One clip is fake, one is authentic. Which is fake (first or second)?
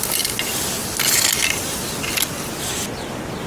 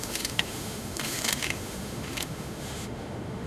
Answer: second